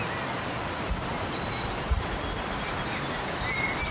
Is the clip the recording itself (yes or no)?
yes